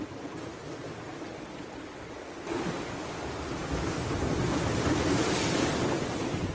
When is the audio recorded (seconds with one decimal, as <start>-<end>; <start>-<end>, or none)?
0.0-6.5